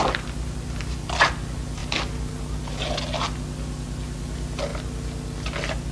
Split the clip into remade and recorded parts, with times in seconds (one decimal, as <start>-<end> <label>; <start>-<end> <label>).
0.0-5.9 recorded